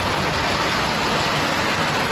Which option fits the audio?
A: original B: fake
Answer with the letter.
A